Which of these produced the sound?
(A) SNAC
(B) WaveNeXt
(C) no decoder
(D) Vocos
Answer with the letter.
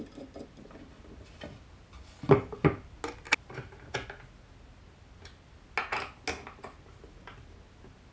C